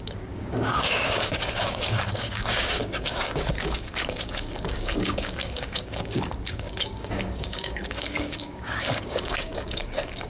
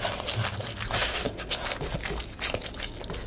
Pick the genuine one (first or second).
second